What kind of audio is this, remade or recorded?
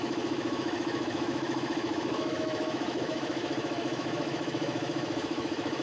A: remade